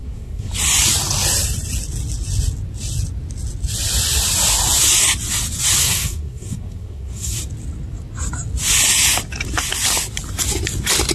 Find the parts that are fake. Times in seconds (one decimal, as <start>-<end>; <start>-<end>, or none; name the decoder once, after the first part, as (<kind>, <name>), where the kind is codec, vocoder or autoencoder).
0.0-0.5 (codec, SNAC); 5.8-7.4